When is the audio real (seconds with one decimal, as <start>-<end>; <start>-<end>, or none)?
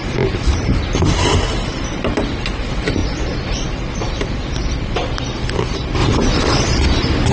0.0-3.0; 5.4-6.0